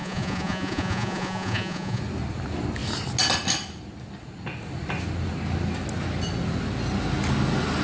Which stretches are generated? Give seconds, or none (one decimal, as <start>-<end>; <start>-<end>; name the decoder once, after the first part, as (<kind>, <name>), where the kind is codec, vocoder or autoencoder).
0.0-2.0 (vocoder, Vocos)